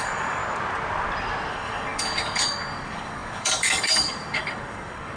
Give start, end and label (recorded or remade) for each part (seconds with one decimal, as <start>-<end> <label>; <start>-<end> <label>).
0.0-0.4 remade; 0.4-1.5 recorded; 1.5-5.2 remade